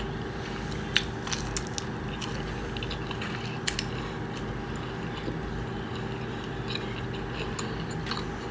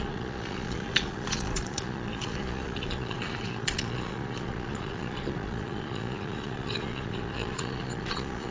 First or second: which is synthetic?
second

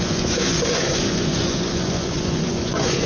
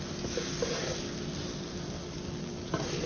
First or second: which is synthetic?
first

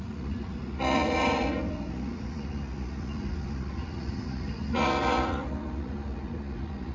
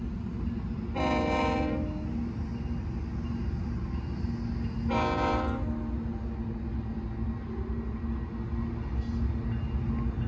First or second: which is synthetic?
first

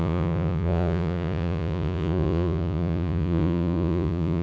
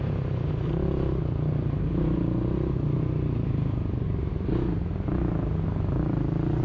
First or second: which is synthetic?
first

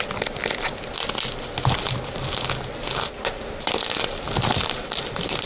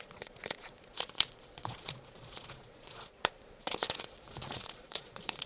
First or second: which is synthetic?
second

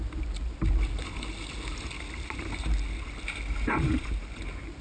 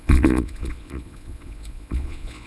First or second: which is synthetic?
second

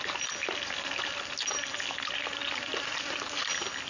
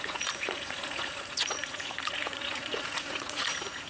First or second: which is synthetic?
second